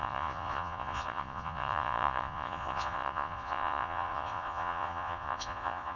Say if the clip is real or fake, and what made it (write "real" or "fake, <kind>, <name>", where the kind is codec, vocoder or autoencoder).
fake, vocoder, Vocos